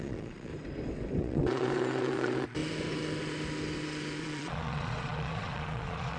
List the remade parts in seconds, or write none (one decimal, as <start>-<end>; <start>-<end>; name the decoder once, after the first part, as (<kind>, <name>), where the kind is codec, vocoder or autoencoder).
0.0-0.5 (vocoder, Vocos); 1.2-2.6; 4.2-6.2